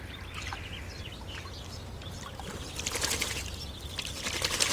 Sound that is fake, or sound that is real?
real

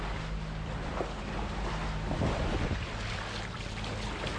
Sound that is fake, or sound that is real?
real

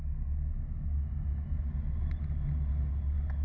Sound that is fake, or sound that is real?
real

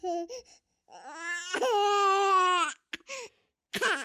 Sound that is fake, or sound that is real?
real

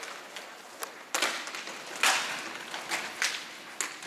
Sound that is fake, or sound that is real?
real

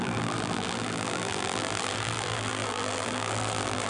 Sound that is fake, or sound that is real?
fake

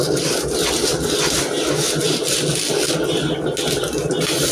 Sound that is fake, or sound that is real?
real